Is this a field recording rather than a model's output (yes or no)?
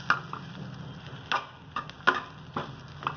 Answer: yes